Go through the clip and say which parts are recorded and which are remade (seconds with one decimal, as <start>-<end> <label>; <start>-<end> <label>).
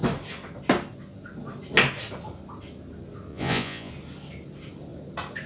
0.0-3.3 recorded; 3.3-3.9 remade; 3.9-5.5 recorded